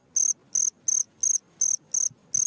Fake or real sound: real